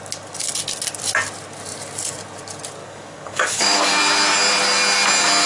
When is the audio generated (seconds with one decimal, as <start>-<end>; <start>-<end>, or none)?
2.8-3.9